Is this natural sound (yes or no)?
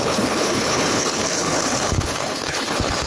no